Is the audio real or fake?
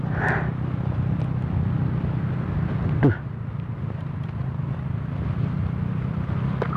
real